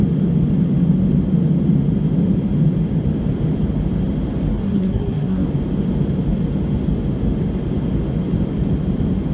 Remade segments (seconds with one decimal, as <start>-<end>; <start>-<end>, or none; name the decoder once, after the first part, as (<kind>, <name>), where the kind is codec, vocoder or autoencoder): 4.5-5.5 (codec, SNAC)